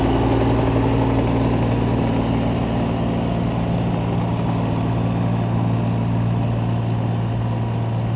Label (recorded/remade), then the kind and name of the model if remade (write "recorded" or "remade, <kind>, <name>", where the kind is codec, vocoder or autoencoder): recorded